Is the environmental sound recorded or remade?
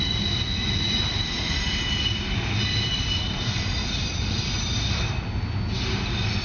recorded